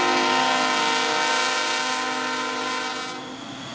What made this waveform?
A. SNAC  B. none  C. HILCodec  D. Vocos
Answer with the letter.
B